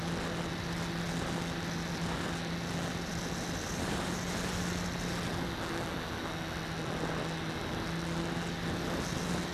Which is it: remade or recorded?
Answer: recorded